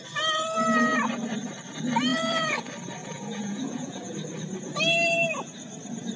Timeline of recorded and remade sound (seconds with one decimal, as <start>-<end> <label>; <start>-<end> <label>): 0.0-2.1 recorded; 2.1-2.6 remade; 2.6-3.0 recorded; 3.0-4.1 remade; 4.1-6.2 recorded